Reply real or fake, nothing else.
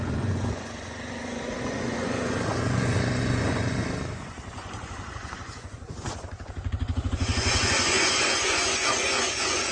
fake